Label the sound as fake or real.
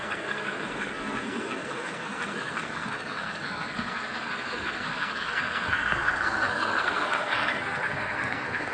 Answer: fake